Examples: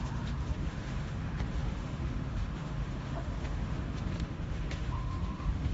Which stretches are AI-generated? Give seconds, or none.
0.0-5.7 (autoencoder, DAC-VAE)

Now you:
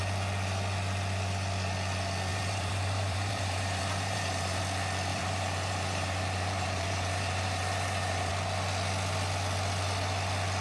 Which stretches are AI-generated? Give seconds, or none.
2.3-4.6 (vocoder, BigVGAN v2); 5.1-8.3

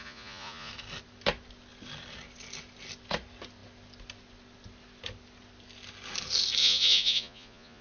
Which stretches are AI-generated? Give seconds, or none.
0.0-0.7 (vocoder, Vocos); 6.6-7.8

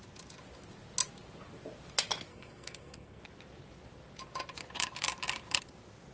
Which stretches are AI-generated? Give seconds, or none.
2.3-3.2 (codec, SNAC)

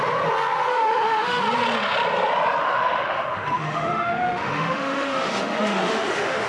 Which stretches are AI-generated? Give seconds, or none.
0.7-1.4 (autoencoder, DAC-VAE); 2.6-6.5

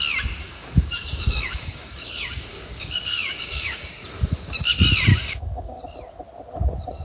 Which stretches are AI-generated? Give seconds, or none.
0.4-3.9 (codec, DAC); 5.1-5.8

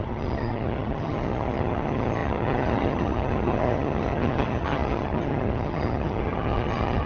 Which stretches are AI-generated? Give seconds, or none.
0.0-7.1 (vocoder, HiFi-GAN)